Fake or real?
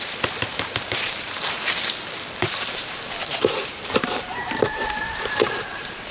fake